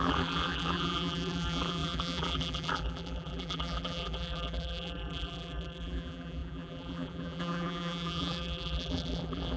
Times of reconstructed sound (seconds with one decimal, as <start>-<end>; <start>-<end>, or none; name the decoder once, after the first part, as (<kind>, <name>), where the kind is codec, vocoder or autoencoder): 0.0-9.6 (vocoder, BigVGAN v2)